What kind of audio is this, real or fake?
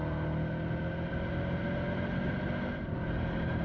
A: real